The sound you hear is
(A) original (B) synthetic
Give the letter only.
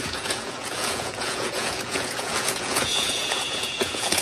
B